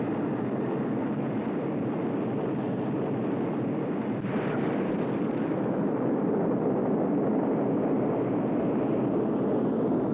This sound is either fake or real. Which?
real